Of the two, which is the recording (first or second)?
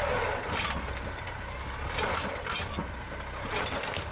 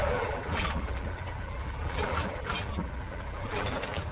first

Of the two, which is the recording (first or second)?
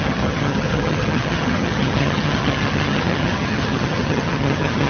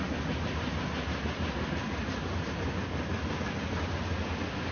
second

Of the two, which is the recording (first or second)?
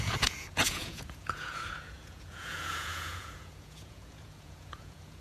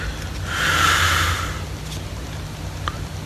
second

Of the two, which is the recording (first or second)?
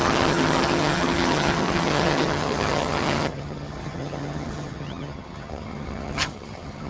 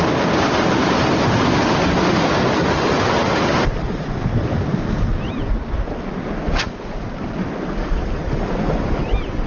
second